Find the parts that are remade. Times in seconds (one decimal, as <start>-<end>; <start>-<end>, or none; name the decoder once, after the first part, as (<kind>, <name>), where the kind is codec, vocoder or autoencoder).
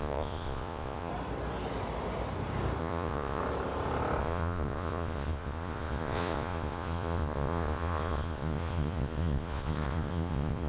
0.0-1.1 (vocoder, Vocos); 2.8-3.4; 4.2-10.7